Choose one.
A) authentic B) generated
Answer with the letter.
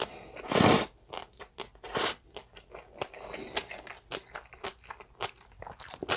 A